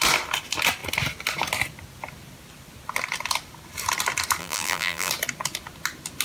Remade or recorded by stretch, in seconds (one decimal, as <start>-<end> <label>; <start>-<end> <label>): 0.0-4.4 recorded; 4.4-5.1 remade; 5.1-6.2 recorded